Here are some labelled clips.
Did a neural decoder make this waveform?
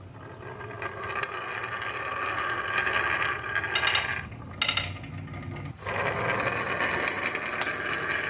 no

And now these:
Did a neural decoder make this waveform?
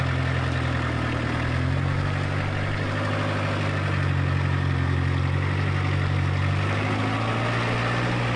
no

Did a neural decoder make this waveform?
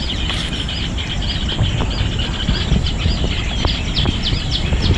no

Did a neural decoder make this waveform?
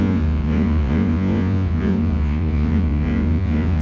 yes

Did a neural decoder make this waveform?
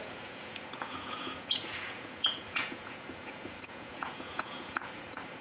yes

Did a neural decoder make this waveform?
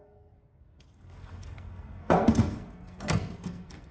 yes